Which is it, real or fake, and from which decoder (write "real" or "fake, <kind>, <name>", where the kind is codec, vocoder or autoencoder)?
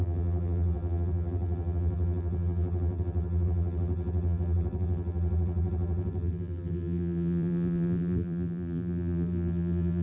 fake, vocoder, BigVGAN v2